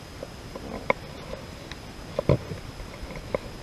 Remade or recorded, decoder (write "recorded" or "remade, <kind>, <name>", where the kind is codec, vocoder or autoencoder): recorded